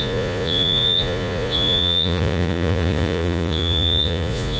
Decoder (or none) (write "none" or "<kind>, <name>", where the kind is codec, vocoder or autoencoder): vocoder, Vocos